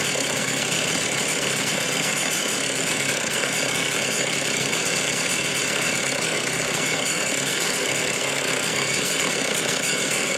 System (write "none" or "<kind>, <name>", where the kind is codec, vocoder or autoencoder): codec, SNAC